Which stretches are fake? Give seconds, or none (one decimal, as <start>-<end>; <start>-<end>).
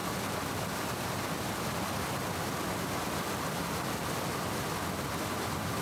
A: none